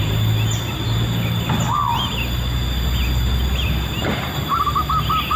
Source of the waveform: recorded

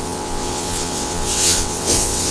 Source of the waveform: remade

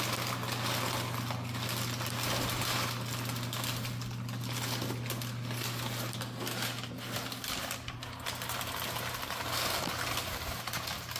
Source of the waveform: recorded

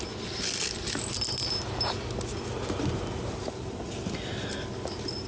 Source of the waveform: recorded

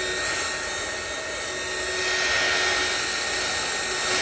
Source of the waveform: recorded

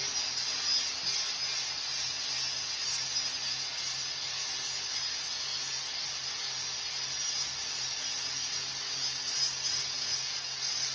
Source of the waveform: recorded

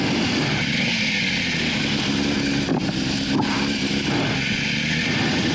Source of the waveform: recorded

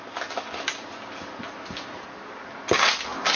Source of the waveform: recorded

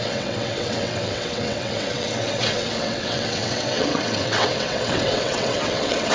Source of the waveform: remade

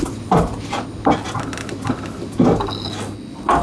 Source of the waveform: recorded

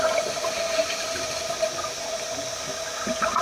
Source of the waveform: recorded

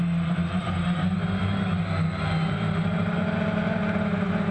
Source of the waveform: remade